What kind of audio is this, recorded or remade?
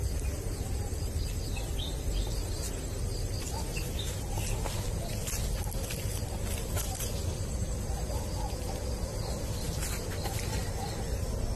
recorded